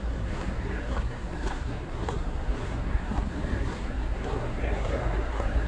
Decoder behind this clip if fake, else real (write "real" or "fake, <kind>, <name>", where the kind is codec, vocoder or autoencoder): fake, codec, SNAC